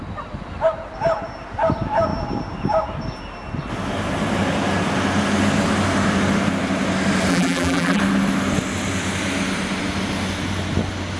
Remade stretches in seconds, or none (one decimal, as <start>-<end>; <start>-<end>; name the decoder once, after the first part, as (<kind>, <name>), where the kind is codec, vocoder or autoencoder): 7.3-8.0 (vocoder, BigVGAN v2)